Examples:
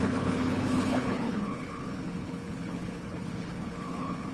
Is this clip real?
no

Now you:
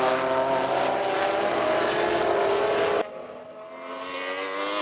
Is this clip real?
yes